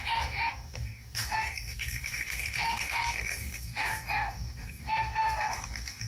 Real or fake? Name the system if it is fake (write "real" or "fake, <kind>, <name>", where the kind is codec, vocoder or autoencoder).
fake, codec, DAC